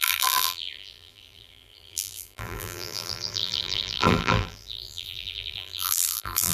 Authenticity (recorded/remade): remade